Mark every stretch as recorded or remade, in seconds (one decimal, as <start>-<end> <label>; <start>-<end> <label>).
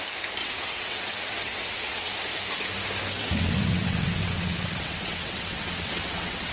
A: 0.0-0.4 recorded; 0.4-2.1 remade; 2.1-3.2 recorded; 3.2-6.5 remade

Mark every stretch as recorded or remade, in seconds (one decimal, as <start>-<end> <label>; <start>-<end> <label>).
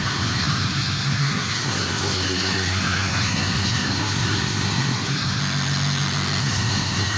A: 0.0-5.4 remade; 5.4-6.4 recorded; 6.4-7.2 remade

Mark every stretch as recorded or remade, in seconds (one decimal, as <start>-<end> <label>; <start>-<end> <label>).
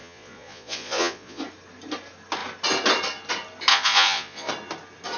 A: 0.0-1.4 remade; 1.4-3.7 recorded; 3.7-4.5 remade; 4.5-5.2 recorded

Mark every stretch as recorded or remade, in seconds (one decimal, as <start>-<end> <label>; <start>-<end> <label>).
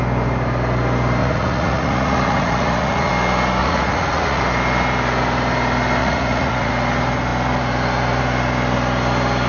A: 0.0-1.2 recorded; 1.2-3.1 remade; 3.1-3.6 recorded; 3.6-4.4 remade; 4.4-6.0 recorded; 6.0-6.7 remade; 6.7-9.5 recorded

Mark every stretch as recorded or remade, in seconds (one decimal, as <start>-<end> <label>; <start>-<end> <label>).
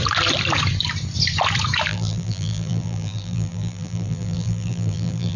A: 0.0-1.9 recorded; 1.9-5.4 remade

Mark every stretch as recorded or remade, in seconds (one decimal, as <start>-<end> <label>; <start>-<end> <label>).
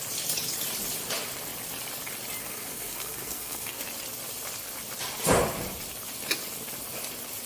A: 0.0-2.4 recorded; 2.4-3.8 remade; 3.8-7.5 recorded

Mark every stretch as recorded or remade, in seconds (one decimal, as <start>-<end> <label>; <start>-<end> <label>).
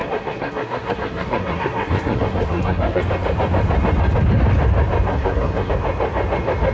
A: 0.0-3.0 remade; 3.0-5.1 recorded; 5.1-5.7 remade; 5.7-6.7 recorded